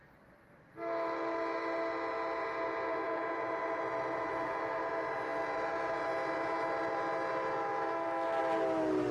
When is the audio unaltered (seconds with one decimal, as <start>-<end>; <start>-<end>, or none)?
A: 0.0-2.9; 3.5-9.1